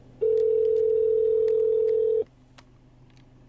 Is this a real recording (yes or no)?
yes